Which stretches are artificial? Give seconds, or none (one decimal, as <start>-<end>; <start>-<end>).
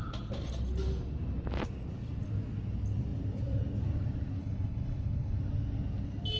4.4-5.4